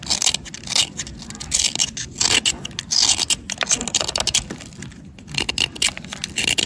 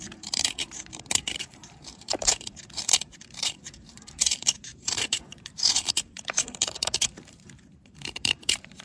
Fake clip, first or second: second